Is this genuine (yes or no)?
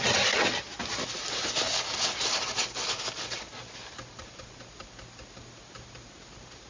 yes